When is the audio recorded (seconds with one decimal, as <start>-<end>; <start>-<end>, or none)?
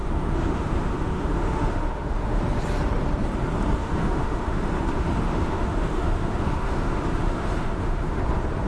2.4-3.8; 8.2-8.7